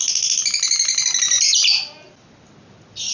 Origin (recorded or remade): recorded